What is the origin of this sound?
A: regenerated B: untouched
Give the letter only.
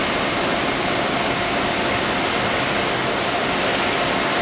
B